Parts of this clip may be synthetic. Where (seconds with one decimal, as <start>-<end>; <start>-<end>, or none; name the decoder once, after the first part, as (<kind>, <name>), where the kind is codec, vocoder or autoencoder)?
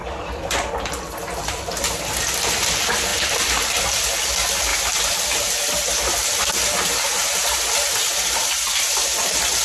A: 0.0-1.8 (vocoder, BigVGAN v2); 3.1-3.8